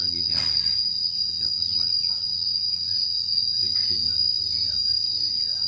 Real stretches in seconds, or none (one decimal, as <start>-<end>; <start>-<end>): 3.6-5.3